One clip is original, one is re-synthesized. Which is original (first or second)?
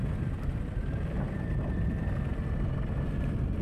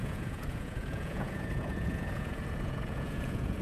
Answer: first